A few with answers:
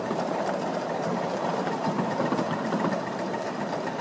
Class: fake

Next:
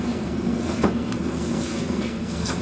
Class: fake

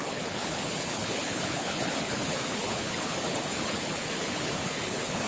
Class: fake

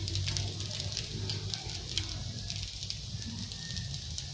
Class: real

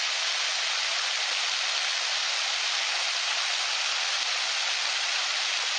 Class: real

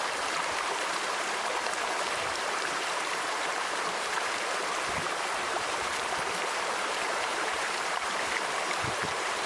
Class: fake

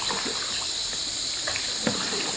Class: real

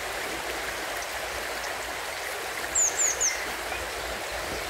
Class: real